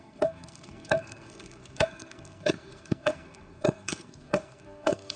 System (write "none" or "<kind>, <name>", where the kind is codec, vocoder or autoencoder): codec, SNAC